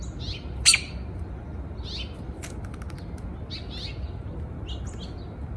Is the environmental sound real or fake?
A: real